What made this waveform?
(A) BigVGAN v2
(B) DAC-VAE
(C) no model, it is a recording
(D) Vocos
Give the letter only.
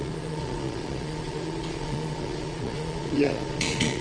D